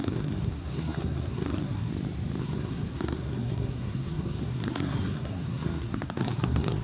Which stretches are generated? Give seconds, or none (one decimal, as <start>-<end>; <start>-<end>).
0.0-1.9; 2.4-6.8